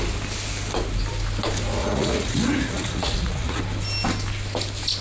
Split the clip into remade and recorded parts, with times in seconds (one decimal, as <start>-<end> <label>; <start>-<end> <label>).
0.0-1.8 recorded; 1.8-3.6 remade; 3.6-5.0 recorded